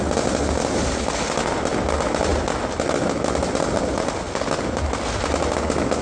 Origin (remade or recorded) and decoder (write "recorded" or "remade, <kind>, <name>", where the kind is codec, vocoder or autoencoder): recorded